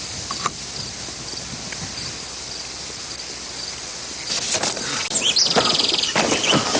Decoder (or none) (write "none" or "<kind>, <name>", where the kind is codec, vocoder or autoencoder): none